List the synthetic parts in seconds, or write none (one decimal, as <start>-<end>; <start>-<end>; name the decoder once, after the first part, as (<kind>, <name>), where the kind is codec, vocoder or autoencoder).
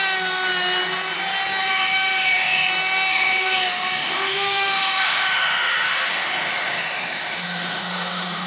1.6-2.7 (autoencoder, DAC-VAE); 3.1-8.5